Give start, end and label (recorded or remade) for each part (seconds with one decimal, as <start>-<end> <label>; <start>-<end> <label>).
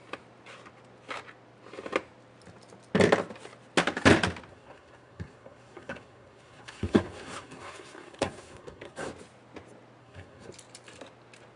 0.0-4.5 recorded; 4.5-9.1 remade; 9.1-10.0 recorded; 10.0-10.5 remade; 10.5-11.6 recorded